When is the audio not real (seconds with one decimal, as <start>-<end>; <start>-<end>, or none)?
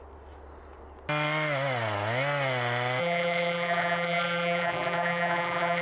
3.0-5.8